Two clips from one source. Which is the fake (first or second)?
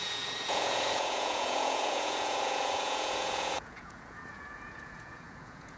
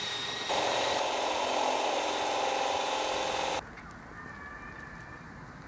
first